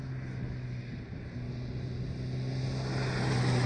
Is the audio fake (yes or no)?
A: no